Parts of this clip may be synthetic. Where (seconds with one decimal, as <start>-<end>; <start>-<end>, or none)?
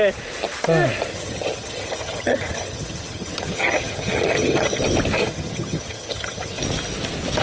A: 1.1-4.8; 5.2-6.6